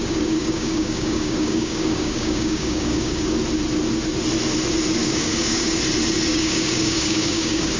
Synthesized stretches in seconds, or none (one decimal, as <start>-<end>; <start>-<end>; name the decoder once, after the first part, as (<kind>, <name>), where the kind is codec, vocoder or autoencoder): 0.0-3.3 (codec, DAC); 5.0-5.8; 6.3-7.8